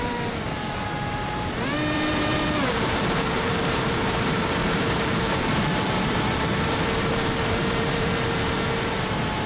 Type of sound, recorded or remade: remade